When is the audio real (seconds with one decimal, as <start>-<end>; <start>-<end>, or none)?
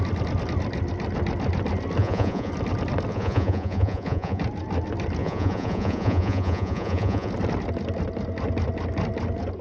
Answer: 0.0-2.0; 2.5-3.1; 4.4-5.2; 7.3-9.6